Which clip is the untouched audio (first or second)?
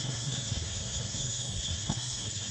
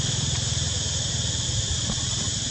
second